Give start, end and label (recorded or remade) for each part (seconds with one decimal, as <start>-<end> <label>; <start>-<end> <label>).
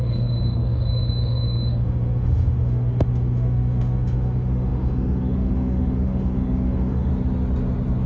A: 0.0-7.1 remade; 7.1-8.1 recorded